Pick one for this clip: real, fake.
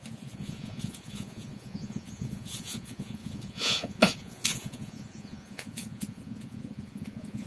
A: fake